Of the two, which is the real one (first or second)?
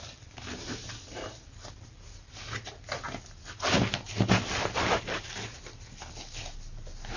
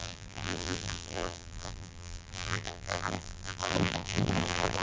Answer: first